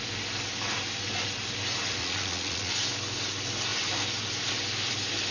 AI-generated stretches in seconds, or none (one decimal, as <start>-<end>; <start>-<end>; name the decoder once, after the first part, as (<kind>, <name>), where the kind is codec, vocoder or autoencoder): 2.0-2.7 (vocoder, Vocos)